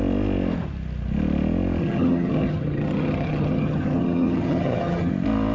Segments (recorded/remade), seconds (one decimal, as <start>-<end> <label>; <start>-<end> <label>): 0.0-1.8 recorded; 1.8-5.1 remade; 5.1-5.5 recorded